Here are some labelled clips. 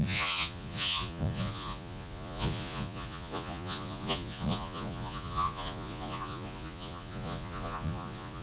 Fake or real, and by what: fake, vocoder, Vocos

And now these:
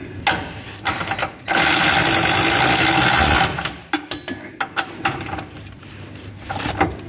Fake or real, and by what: real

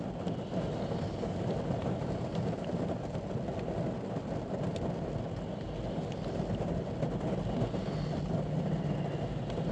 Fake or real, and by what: real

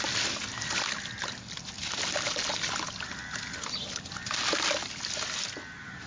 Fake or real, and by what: real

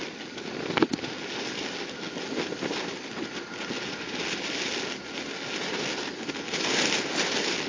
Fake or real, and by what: real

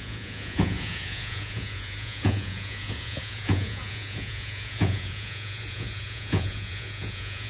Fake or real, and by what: fake, vocoder, Vocos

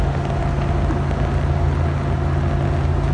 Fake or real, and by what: real